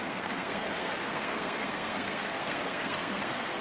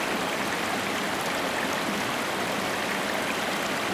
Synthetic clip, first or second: first